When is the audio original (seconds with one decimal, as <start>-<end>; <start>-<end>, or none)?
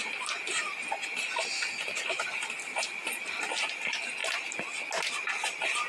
0.0-0.6; 3.4-5.9